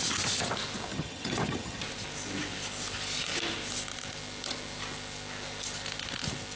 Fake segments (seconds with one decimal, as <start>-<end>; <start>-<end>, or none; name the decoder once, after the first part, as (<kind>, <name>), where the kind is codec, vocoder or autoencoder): 0.9-1.8 (vocoder, HiFi-GAN)